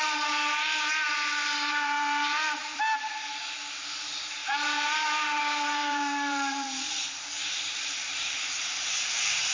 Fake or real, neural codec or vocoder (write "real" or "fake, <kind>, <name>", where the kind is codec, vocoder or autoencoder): fake, vocoder, BigVGAN v2